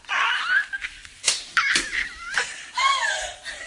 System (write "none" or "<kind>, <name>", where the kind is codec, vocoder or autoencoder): vocoder, BigVGAN v2